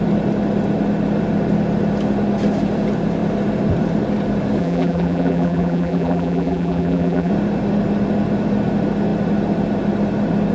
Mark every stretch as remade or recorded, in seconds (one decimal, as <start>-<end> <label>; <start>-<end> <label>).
0.0-4.6 recorded; 4.6-7.3 remade; 7.3-10.5 recorded